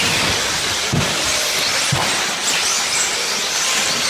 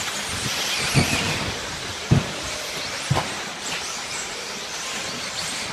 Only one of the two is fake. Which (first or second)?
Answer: second